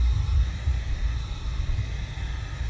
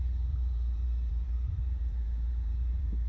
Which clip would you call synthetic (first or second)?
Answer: second